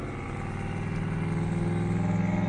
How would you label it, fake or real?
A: real